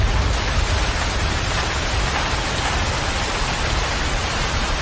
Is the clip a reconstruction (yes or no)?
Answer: no